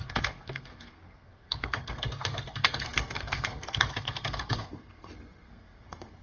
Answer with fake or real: fake